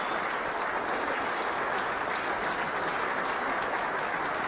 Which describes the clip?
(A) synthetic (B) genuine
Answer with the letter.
B